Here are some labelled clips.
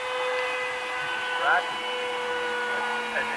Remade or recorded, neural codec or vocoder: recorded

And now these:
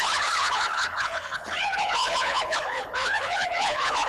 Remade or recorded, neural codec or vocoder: remade, codec, HILCodec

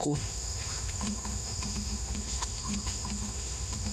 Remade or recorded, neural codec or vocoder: remade, autoencoder, DAC-VAE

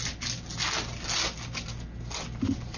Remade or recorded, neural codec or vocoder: recorded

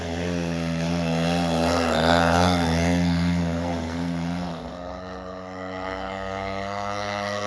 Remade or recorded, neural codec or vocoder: remade, codec, SNAC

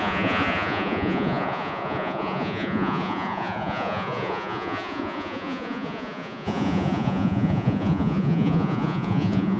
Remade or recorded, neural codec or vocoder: remade, vocoder, Vocos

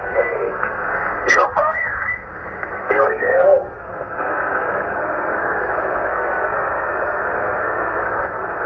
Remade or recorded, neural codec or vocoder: remade, codec, SNAC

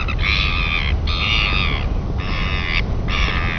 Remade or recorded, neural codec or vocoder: recorded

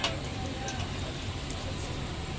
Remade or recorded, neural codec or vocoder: remade, vocoder, BigVGAN v2